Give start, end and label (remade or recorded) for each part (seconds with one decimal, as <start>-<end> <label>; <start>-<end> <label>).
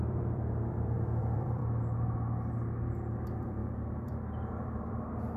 0.0-1.6 remade; 1.6-3.2 recorded; 3.2-5.4 remade